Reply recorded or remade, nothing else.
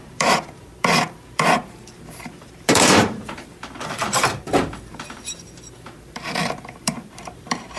remade